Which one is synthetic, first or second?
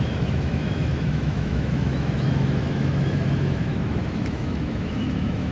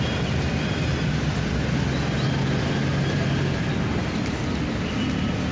first